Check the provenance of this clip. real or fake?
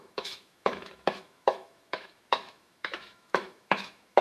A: fake